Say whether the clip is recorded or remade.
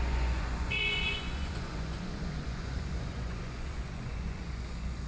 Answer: remade